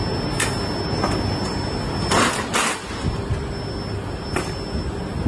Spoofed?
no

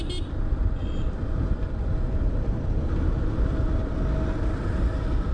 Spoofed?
no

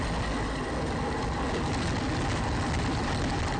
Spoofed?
no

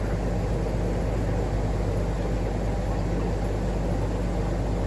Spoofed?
no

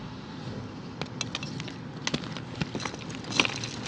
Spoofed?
no